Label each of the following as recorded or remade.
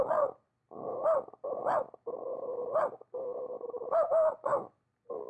recorded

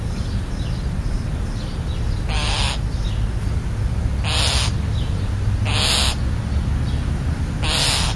recorded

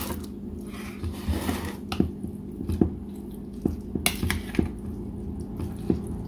recorded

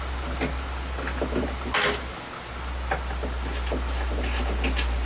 recorded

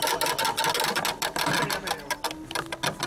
recorded